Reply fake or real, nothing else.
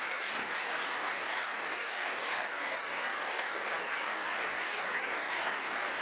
fake